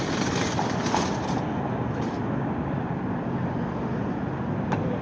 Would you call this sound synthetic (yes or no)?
no